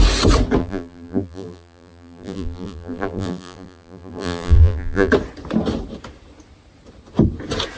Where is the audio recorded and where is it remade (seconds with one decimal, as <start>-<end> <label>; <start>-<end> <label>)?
0.0-0.6 recorded; 0.6-5.1 remade; 5.1-7.8 recorded